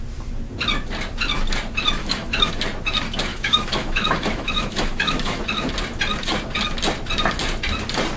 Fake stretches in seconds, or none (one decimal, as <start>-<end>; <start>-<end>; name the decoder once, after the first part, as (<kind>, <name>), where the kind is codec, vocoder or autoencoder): 2.0-2.5 (autoencoder, DAC-VAE); 3.3-5.4